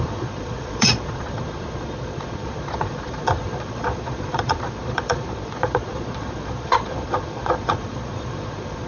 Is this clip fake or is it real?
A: fake